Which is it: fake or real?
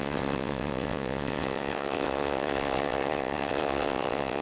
fake